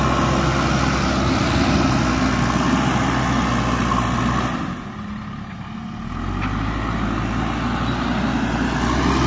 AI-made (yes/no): no